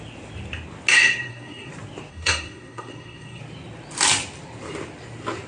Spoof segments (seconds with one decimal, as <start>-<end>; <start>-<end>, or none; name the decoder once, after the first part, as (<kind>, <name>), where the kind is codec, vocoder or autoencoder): 0.9-1.7 (codec, SNAC); 2.1-3.4